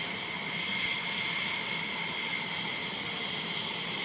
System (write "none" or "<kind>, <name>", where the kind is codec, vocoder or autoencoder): none